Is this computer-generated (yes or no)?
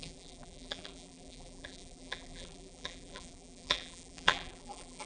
yes